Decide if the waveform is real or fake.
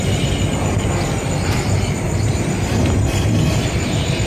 real